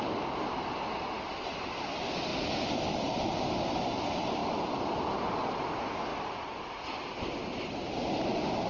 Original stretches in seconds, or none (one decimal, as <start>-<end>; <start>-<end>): 0.0-2.3; 3.2-4.4; 5.2-6.1; 8.0-8.7